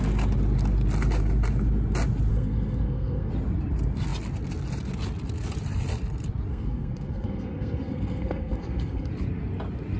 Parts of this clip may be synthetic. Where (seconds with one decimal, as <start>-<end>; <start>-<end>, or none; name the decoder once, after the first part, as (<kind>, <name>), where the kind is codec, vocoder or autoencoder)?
2.3-3.3 (codec, SNAC); 6.5-9.1